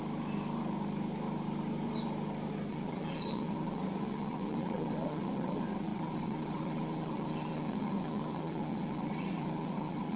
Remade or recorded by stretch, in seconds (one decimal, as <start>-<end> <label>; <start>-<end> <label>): 0.0-2.7 recorded; 2.7-10.2 remade